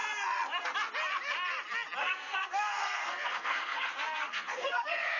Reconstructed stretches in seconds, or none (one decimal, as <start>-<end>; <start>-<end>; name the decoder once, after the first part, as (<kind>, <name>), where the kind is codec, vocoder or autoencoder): 2.0-5.2 (codec, SNAC)